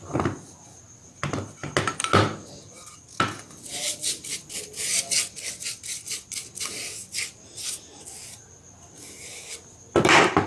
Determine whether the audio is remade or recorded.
recorded